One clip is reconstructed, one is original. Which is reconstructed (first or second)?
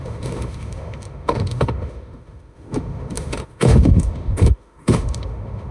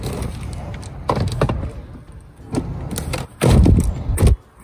first